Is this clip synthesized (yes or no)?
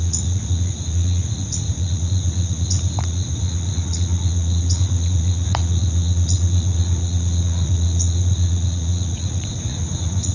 yes